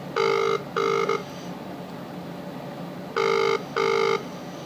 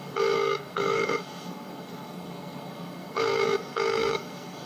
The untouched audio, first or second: first